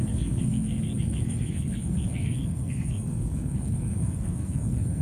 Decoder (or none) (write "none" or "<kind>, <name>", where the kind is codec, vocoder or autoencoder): codec, SNAC